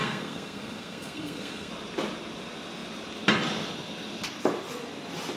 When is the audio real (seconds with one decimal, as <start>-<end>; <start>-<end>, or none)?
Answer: 1.7-5.4